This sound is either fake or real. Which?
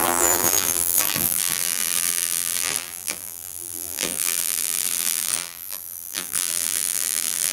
fake